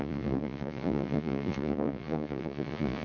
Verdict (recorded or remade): remade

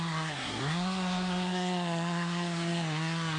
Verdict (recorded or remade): remade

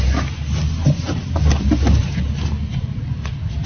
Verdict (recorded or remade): recorded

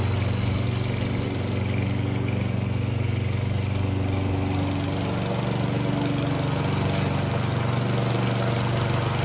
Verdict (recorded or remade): recorded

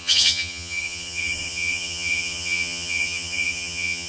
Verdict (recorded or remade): remade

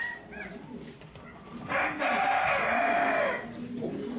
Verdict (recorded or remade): recorded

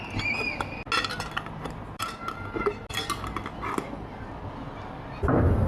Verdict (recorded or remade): recorded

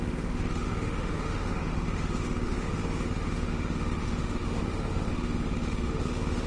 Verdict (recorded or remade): remade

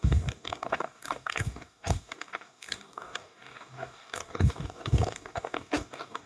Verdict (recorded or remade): remade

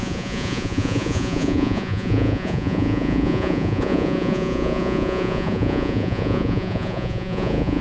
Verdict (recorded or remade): remade